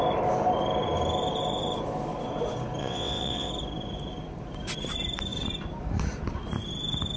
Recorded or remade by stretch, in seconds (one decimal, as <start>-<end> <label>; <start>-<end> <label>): 0.0-2.8 recorded; 2.8-3.5 remade; 3.5-7.2 recorded